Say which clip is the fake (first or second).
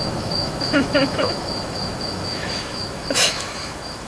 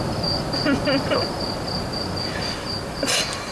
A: first